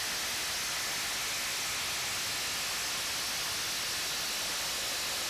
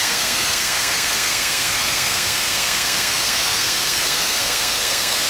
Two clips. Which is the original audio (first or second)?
first